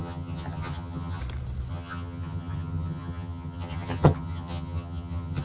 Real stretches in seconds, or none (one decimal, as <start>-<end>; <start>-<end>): 1.2-1.7